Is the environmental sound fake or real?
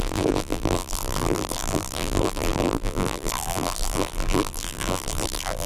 fake